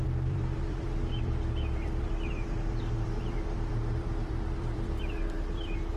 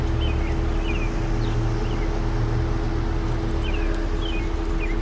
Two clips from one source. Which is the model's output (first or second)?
first